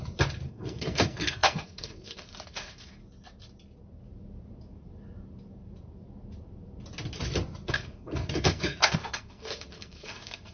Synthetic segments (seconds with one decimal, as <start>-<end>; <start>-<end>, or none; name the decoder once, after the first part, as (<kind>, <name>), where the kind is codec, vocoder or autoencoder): 0.5-3.0 (codec, SNAC); 7.7-10.5